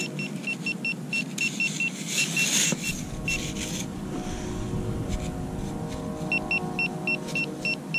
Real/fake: real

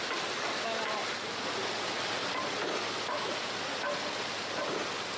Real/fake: real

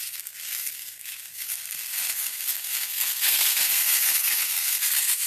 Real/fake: fake